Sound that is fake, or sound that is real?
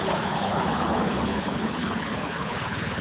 fake